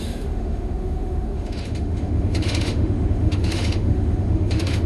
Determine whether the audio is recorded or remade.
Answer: remade